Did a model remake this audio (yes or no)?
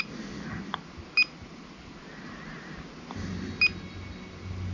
no